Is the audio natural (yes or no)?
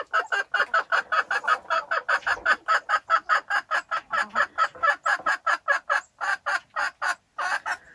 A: yes